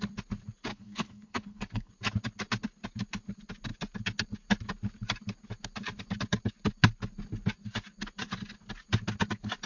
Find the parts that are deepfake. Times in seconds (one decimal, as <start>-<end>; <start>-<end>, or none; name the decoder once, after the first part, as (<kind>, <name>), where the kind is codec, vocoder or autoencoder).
0.7-1.9 (codec, SNAC)